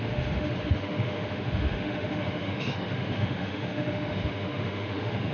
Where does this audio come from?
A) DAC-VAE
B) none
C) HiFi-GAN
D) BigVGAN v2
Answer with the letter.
A